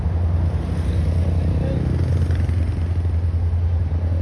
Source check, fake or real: real